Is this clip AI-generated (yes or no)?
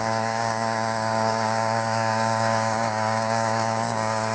yes